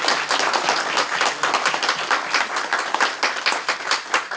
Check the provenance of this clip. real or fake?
real